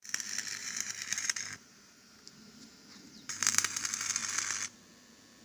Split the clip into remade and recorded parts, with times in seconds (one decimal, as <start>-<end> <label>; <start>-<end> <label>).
0.0-0.6 recorded; 0.6-3.8 remade; 3.8-5.4 recorded